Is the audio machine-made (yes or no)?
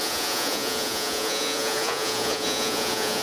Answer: yes